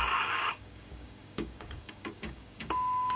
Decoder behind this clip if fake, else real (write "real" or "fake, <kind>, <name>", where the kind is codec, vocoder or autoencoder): fake, codec, DAC